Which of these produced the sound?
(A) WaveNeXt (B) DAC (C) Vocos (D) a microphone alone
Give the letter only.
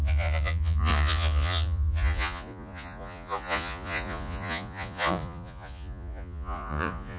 C